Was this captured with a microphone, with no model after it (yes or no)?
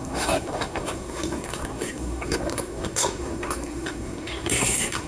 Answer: no